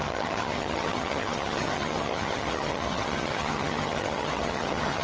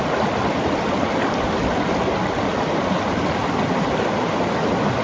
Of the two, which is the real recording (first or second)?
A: second